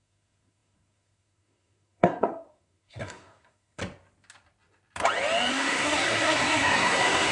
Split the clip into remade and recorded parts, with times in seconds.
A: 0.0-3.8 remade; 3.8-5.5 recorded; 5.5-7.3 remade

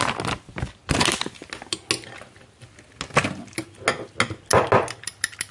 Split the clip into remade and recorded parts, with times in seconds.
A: 0.0-5.5 recorded

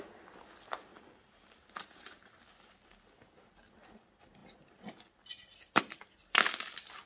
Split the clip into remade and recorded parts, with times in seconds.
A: 0.0-0.9 recorded; 0.9-2.4 remade; 2.4-7.1 recorded